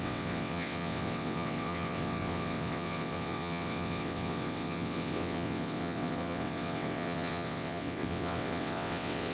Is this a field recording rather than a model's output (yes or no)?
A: no